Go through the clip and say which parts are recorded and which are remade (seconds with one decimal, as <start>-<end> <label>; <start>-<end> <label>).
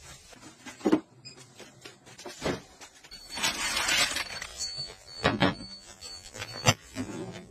0.0-4.5 recorded; 4.5-7.5 remade